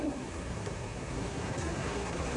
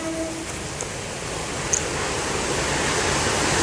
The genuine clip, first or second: second